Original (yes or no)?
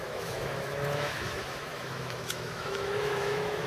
no